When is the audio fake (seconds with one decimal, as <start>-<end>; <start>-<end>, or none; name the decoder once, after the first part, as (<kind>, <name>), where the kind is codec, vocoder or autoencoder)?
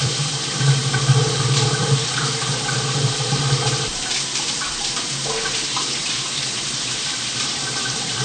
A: 0.0-0.8 (vocoder, BigVGAN v2); 5.5-8.2